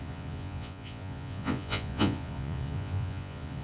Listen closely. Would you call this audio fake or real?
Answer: fake